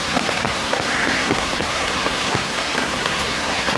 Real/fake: fake